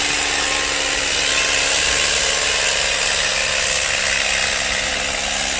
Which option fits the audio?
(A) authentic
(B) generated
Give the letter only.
A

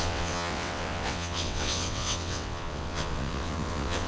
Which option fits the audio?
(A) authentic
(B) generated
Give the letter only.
B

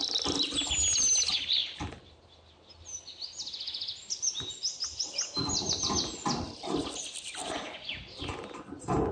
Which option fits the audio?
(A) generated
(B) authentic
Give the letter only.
B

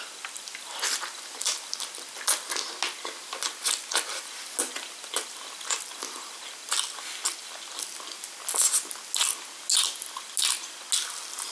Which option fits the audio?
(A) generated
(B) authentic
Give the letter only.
B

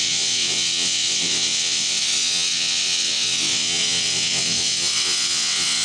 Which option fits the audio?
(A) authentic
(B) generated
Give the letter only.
B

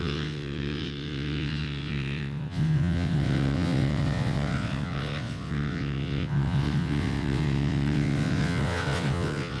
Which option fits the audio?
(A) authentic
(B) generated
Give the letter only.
B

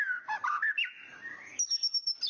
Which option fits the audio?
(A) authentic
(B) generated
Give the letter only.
A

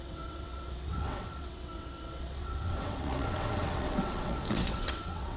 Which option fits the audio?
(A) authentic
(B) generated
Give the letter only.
B